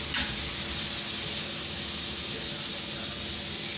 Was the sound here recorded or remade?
recorded